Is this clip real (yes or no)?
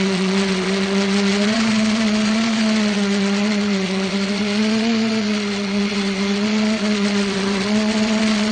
no